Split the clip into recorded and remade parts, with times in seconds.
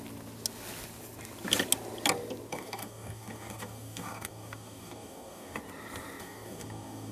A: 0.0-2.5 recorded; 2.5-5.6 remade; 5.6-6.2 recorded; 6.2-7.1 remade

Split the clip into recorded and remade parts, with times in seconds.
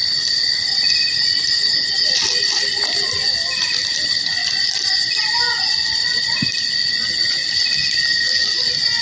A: 0.0-9.0 recorded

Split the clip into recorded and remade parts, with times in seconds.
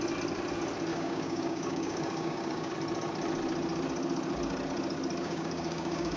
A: 0.0-0.9 recorded; 0.9-2.7 remade; 2.7-5.2 recorded; 5.2-6.2 remade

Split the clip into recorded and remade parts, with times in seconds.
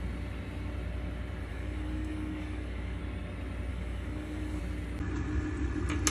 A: 0.0-1.5 recorded; 1.5-3.0 remade; 3.0-3.7 recorded; 3.7-4.6 remade; 4.6-6.1 recorded